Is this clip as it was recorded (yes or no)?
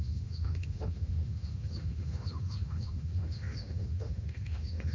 no